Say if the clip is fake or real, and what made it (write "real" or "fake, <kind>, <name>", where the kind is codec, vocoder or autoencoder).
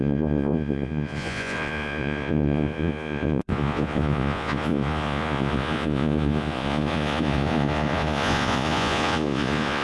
fake, vocoder, Vocos